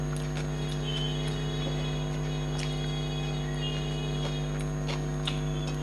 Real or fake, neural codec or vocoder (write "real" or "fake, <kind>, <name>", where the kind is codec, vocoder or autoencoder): real